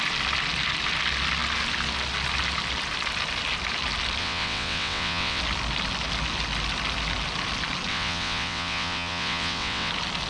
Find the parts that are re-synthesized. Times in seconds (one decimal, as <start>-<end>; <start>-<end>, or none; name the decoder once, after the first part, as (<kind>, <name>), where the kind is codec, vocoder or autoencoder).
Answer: 4.2-5.4 (vocoder, WaveNeXt); 7.9-9.9